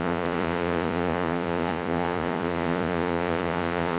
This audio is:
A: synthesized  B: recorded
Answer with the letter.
A